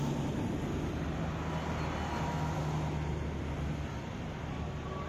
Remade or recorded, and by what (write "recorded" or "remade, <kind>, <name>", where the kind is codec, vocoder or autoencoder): recorded